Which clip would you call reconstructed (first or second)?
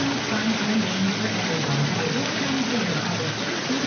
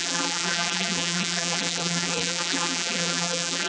second